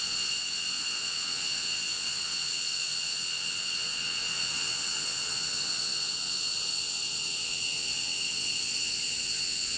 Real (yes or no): no